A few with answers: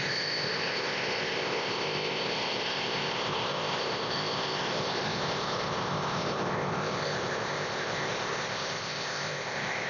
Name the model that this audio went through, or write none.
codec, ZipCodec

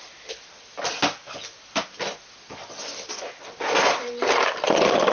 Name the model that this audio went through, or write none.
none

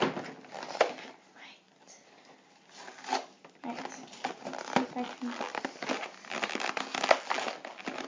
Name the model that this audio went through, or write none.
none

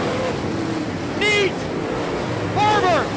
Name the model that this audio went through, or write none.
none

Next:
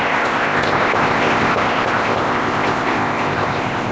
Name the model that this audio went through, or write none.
codec, ZipCodec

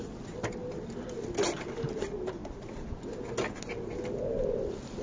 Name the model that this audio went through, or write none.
none